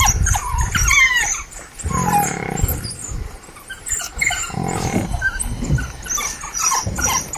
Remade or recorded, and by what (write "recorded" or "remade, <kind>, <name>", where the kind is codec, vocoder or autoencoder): recorded